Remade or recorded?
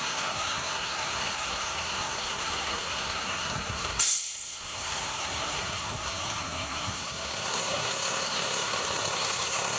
remade